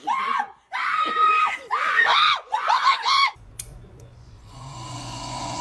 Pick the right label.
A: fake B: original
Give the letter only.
A